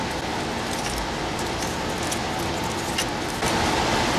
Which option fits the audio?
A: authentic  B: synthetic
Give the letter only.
A